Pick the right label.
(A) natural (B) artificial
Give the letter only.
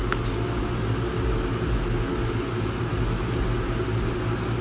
A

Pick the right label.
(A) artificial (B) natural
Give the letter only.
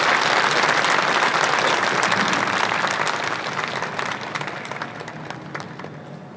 B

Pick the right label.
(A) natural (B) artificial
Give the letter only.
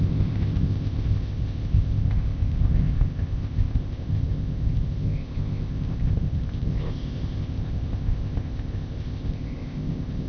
B